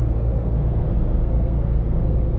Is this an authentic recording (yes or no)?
no